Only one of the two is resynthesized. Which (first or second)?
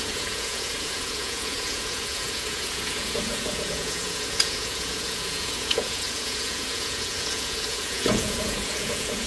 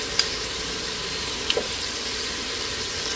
first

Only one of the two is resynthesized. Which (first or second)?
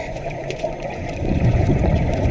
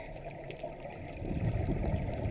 first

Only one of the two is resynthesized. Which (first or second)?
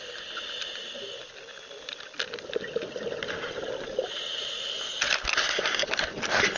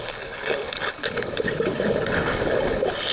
second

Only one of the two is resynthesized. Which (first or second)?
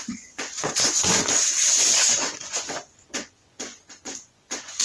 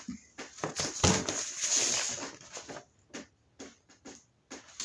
first